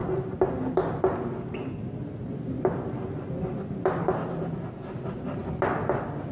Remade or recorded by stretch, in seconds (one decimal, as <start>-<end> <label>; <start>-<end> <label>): 0.0-5.4 recorded; 5.4-6.3 remade